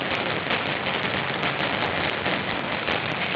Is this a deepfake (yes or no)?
no